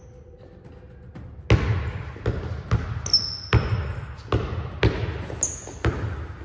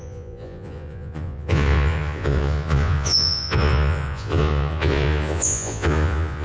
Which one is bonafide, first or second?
first